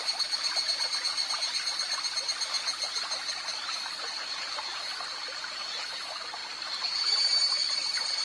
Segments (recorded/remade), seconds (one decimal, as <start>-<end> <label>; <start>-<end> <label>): 0.0-1.1 recorded; 1.1-2.2 remade; 2.2-8.2 recorded